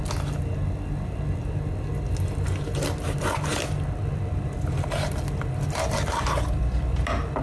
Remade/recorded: recorded